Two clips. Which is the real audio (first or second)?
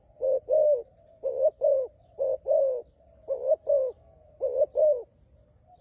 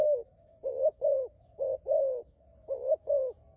first